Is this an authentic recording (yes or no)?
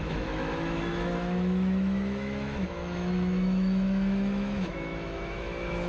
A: no